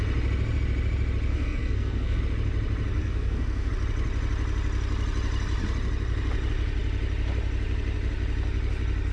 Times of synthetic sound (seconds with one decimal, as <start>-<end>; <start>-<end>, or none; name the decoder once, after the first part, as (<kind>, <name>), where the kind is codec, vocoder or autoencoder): 1.3-2.2 (codec, SNAC); 3.0-3.7